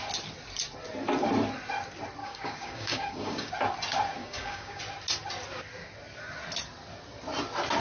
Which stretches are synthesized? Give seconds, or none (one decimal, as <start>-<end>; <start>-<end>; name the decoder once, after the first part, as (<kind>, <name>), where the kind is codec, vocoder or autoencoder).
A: 2.2-3.5 (codec, DAC); 4.2-4.8